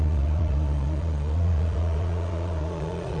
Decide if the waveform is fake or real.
fake